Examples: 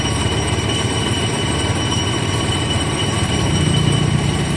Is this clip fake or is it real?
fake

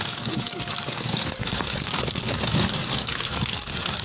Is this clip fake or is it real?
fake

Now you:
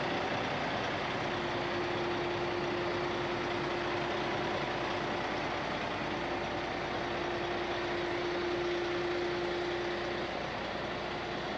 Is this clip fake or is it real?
real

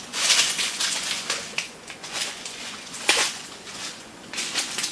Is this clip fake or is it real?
fake